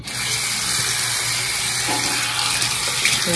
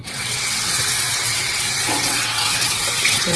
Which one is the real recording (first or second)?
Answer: first